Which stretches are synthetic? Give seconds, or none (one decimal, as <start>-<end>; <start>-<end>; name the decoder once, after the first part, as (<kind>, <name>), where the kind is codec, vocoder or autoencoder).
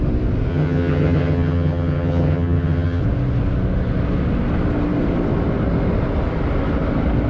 0.5-3.0 (vocoder, HiFi-GAN)